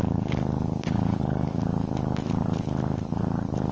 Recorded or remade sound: recorded